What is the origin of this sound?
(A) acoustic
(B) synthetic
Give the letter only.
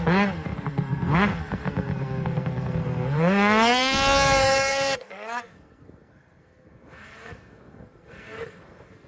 B